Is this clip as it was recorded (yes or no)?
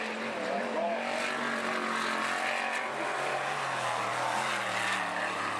yes